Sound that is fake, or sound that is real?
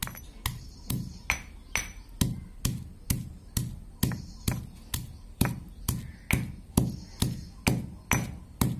real